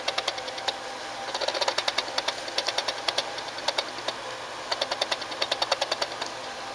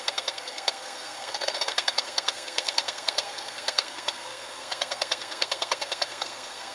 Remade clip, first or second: second